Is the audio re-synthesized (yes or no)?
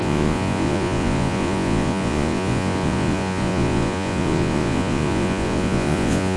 yes